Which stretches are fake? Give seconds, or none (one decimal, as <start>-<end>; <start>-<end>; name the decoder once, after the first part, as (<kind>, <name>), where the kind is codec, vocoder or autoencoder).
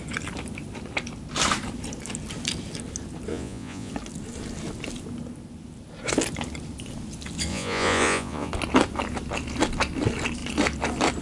3.3-3.9 (vocoder, Vocos); 7.5-8.5